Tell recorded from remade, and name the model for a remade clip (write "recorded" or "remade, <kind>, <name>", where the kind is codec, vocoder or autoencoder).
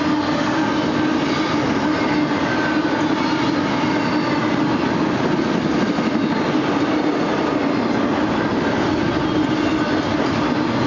recorded